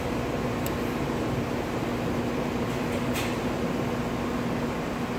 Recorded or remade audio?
recorded